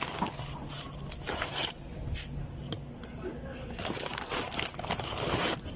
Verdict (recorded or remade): recorded